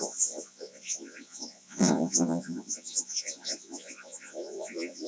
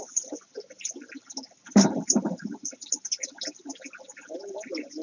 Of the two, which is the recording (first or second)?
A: second